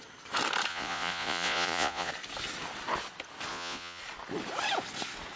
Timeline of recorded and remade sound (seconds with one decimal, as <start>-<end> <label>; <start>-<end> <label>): 0.0-0.7 recorded; 0.7-2.1 remade; 2.1-3.5 recorded; 3.5-4.0 remade; 4.0-5.4 recorded

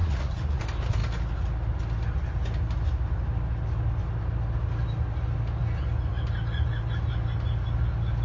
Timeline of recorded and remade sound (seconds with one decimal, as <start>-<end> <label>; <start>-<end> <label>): 0.0-0.6 remade; 0.6-8.2 recorded

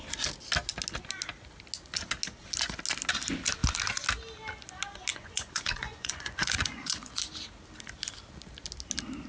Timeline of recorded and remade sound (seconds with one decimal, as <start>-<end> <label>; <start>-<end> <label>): 0.0-5.1 recorded; 5.1-7.2 remade; 7.2-9.3 recorded

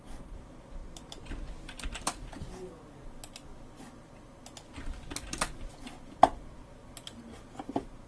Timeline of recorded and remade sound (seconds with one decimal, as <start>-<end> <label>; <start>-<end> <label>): 0.0-8.1 recorded

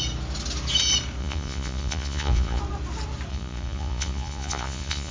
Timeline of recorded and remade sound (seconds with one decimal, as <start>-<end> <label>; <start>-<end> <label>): 0.0-1.2 recorded; 1.2-2.6 remade; 2.6-3.3 recorded; 3.3-5.1 remade

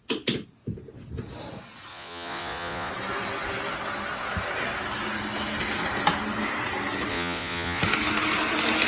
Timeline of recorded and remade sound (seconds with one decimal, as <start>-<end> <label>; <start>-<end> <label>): 0.0-1.9 recorded; 1.9-2.9 remade; 2.9-7.1 recorded; 7.1-7.8 remade; 7.8-8.9 recorded

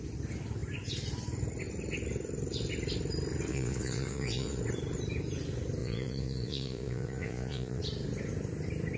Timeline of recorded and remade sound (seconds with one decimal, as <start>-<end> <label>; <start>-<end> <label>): 0.0-3.5 recorded; 3.5-4.6 remade; 4.6-5.8 recorded; 5.8-7.8 remade; 7.8-9.0 recorded